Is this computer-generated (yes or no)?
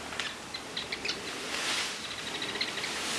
no